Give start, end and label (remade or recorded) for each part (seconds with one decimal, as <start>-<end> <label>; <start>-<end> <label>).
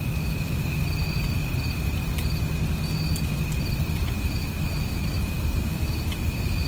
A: 0.0-0.8 remade; 0.8-4.1 recorded; 4.1-6.7 remade